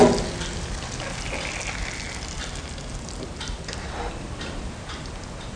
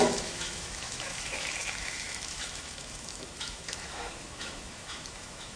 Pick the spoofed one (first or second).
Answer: second